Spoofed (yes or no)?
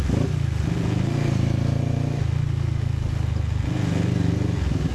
no